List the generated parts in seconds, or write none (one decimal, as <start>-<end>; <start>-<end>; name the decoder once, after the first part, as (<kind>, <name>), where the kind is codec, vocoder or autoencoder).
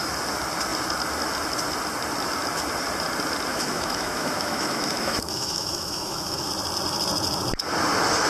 3.5-6.5 (autoencoder, DAC-VAE)